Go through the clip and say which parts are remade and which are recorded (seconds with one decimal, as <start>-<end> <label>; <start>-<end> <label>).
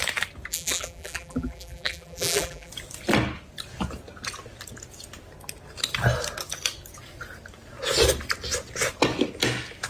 0.0-0.5 recorded; 0.5-2.7 remade; 2.7-9.9 recorded